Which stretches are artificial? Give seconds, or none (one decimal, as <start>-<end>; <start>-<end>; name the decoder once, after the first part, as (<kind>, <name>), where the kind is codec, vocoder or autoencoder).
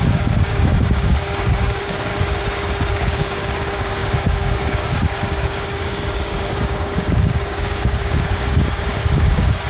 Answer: 0.0-2.1 (codec, DAC); 2.9-9.7